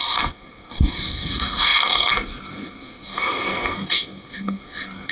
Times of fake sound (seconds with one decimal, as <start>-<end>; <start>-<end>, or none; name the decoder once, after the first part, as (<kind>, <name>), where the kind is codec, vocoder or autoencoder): 0.0-5.1 (codec, SNAC)